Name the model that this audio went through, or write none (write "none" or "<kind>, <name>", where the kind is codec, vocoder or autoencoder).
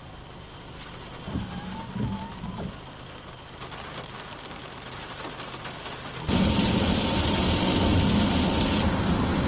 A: none